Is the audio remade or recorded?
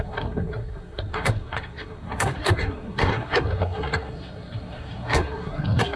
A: remade